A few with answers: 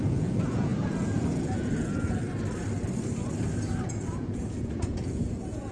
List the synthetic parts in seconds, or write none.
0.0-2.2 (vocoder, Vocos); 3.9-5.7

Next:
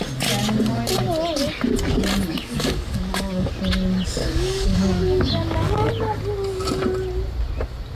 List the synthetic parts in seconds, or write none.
2.3-3.5 (codec, DAC); 4.2-5.9

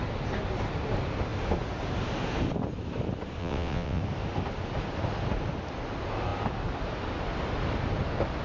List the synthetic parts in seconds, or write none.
3.4-4.0 (vocoder, WaveNeXt)

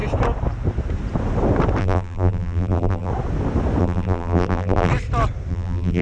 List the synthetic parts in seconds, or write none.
1.8-3.1 (vocoder, BigVGAN v2); 3.8-4.9; 5.5-6.0

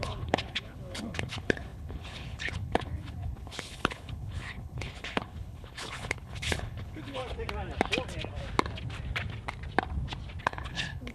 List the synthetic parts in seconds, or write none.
0.0-7.2 (codec, HILCodec); 10.4-11.1

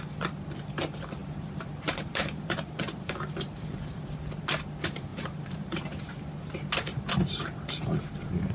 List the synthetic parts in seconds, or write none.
1.2-4.0 (vocoder, BigVGAN v2); 5.1-6.1; 6.9-7.7